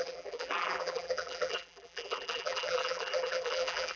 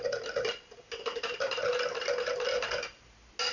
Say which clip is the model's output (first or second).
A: first